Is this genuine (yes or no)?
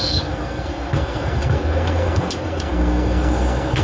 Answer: no